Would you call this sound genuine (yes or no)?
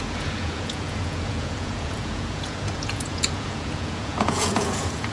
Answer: no